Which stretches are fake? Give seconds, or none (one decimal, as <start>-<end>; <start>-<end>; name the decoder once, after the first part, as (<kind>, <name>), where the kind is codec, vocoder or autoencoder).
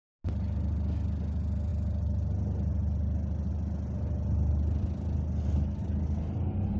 none